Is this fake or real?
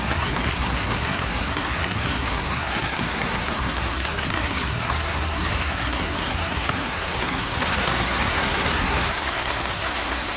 fake